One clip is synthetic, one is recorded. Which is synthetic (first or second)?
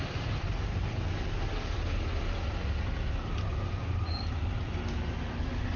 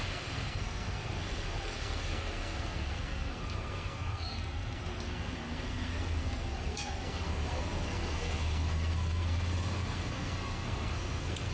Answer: second